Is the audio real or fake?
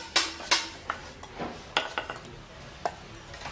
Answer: real